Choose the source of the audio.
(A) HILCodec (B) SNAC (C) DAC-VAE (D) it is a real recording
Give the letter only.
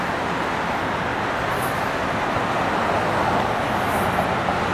D